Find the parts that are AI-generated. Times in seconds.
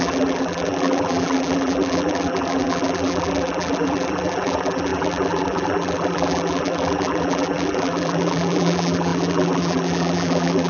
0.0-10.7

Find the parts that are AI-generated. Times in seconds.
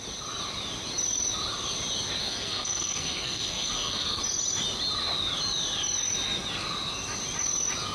2.2-4.2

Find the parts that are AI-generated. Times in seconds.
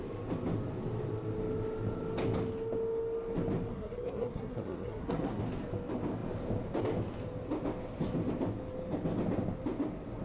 3.7-5.4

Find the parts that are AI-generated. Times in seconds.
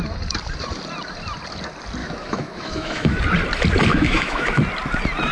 2.0-3.2; 3.9-4.6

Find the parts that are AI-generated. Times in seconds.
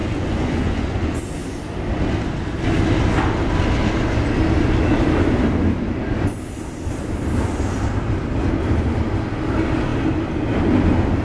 0.0-1.2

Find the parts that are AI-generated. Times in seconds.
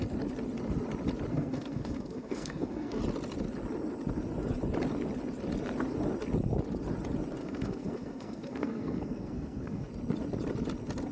1.3-3.0; 7.4-9.9